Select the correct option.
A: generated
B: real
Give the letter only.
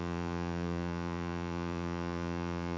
A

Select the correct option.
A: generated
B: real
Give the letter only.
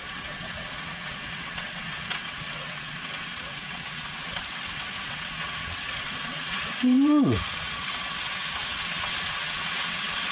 A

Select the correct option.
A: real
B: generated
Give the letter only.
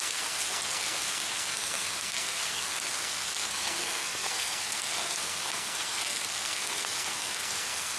B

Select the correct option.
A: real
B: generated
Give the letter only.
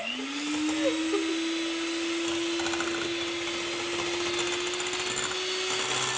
A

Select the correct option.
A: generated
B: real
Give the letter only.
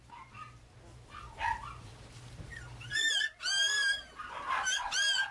B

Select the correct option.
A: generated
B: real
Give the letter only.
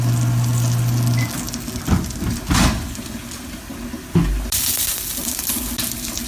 B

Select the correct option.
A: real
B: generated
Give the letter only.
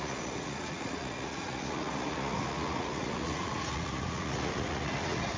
B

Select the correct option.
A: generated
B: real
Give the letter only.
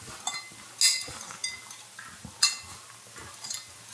B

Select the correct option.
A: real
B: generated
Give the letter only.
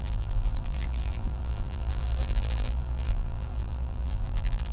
B